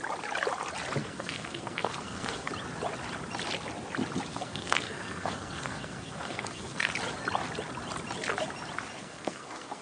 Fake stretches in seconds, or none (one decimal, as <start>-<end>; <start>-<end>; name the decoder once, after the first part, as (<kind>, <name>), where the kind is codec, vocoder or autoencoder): 1.0-2.5 (codec, SNAC); 4.3-6.9; 9.0-9.8